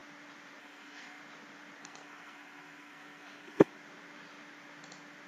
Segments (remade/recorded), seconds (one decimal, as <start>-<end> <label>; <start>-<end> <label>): 0.0-0.6 recorded; 0.6-1.2 remade; 1.2-1.8 recorded; 1.8-3.7 remade; 3.7-5.3 recorded